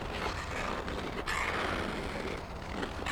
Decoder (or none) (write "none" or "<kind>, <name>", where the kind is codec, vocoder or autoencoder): none